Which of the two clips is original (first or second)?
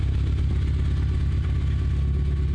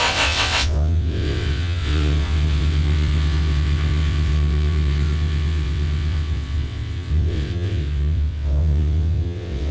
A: first